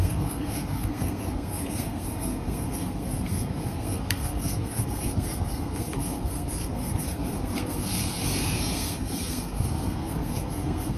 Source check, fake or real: fake